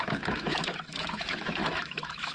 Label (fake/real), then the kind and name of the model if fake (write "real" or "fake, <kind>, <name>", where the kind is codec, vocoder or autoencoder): fake, autoencoder, DAC-VAE